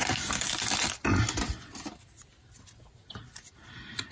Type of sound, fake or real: real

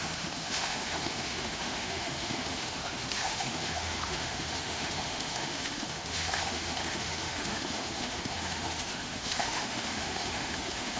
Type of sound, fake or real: fake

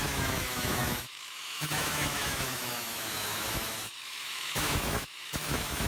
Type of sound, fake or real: fake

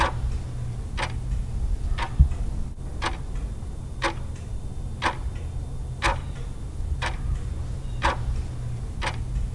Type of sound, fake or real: real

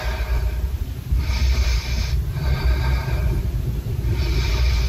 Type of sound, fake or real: fake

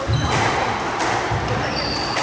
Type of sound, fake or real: real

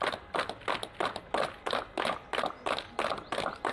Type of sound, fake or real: real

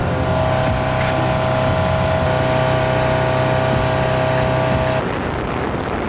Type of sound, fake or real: real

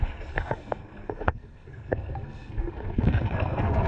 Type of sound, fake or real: fake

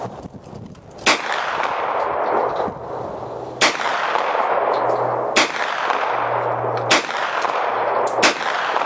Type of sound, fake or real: real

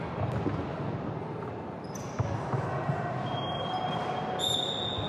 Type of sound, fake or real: real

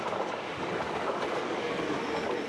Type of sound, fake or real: fake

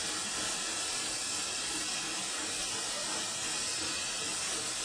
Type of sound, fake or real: real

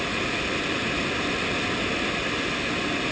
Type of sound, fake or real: real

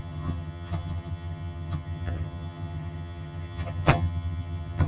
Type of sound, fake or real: fake